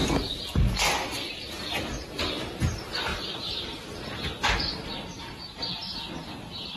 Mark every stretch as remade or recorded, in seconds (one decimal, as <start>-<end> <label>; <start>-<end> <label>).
0.0-6.8 recorded